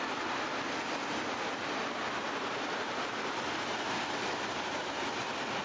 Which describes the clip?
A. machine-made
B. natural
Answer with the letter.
B